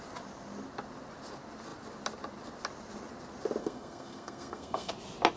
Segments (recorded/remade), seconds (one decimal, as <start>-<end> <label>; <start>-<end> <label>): 0.0-3.6 recorded; 3.6-4.9 remade; 4.9-5.4 recorded